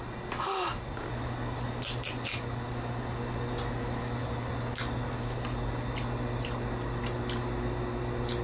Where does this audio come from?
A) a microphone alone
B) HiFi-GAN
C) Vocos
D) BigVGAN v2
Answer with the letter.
A